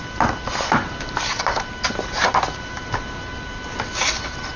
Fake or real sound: real